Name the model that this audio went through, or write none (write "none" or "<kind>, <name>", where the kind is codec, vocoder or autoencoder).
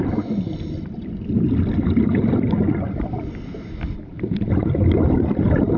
none